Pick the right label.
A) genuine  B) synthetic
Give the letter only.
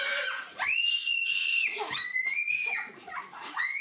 B